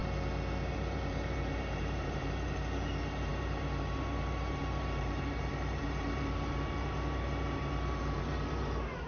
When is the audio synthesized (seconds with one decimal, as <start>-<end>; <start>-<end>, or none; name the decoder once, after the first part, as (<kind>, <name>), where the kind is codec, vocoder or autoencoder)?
0.7-9.1 (vocoder, BigVGAN v2)